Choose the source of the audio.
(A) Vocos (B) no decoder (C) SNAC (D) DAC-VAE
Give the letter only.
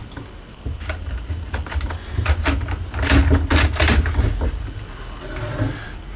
B